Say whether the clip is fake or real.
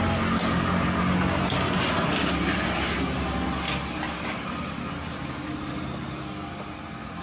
real